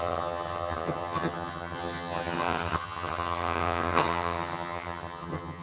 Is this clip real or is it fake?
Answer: fake